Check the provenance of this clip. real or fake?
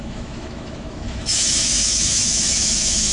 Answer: fake